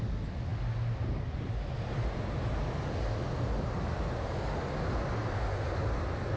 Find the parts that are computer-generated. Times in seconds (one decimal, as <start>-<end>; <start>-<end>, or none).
none